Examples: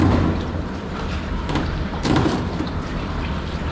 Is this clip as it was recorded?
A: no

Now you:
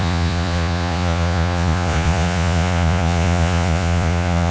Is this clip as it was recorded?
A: no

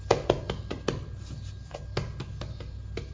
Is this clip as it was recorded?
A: yes